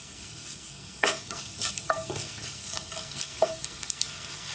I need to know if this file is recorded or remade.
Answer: remade